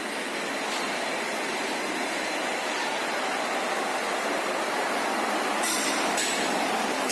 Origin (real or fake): real